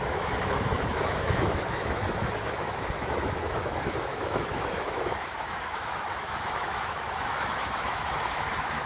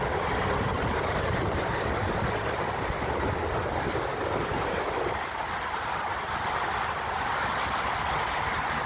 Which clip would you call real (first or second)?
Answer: second